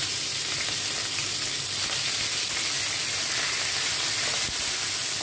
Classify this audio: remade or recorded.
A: recorded